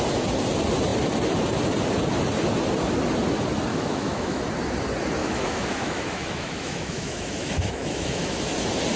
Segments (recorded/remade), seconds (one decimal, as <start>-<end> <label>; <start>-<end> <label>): 0.0-3.7 recorded; 3.7-4.4 remade; 4.4-5.2 recorded; 5.2-8.4 remade; 8.4-9.0 recorded